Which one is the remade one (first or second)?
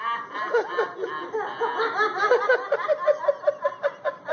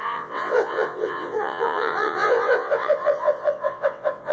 second